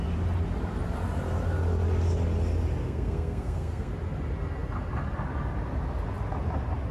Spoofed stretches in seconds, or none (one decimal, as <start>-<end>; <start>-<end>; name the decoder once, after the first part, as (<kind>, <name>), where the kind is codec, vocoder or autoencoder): 2.8-3.9 (codec, SNAC)